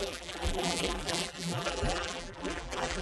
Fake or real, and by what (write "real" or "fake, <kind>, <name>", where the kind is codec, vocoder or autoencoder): fake, vocoder, BigVGAN v2